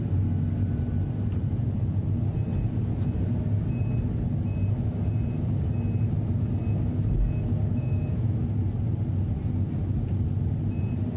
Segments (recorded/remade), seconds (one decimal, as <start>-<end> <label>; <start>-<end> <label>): 0.0-7.7 recorded; 7.7-8.4 remade; 8.4-11.2 recorded